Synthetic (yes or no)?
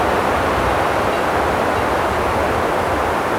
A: no